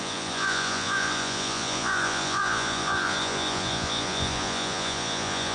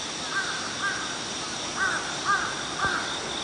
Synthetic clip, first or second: first